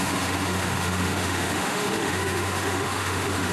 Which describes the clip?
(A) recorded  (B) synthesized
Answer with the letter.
B